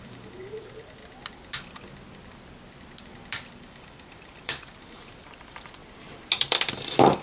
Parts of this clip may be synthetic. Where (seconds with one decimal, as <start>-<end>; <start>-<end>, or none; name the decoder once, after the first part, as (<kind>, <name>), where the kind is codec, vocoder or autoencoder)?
0.0-1.0 (vocoder, BigVGAN v2); 3.5-5.8; 6.4-7.2